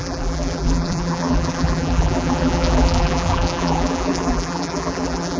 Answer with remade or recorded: remade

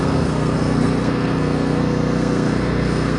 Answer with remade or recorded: remade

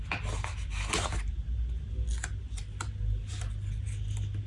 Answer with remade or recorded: recorded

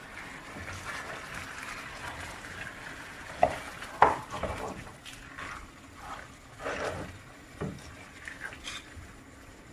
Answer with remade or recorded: recorded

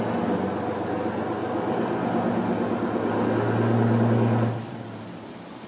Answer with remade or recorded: recorded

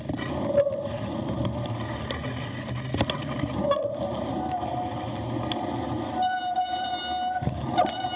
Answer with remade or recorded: recorded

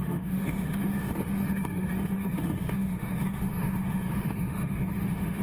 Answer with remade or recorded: remade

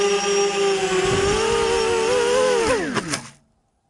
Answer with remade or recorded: recorded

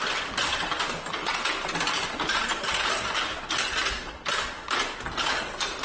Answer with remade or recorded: recorded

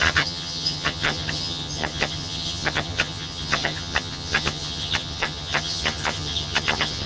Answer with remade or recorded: remade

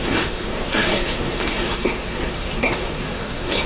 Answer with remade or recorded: remade